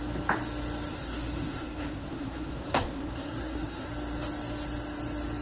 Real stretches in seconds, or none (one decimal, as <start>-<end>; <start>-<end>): 0.0-0.9; 3.9-5.4